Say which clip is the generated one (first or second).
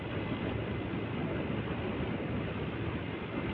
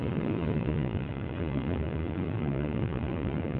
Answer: second